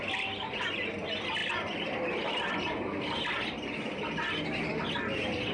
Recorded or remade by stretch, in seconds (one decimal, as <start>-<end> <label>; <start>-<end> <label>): 0.0-5.5 recorded